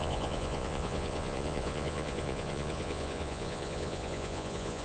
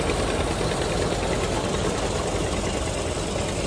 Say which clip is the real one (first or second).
second